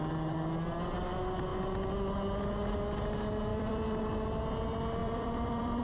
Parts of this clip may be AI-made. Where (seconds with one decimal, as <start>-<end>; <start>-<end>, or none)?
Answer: 3.5-4.0; 5.0-5.8